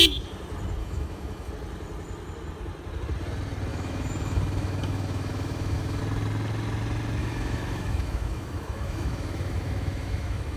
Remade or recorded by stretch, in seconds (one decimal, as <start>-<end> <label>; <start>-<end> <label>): 0.0-0.8 recorded; 0.8-1.5 remade; 1.5-3.7 recorded; 3.7-6.0 remade; 6.0-7.2 recorded; 7.2-10.6 remade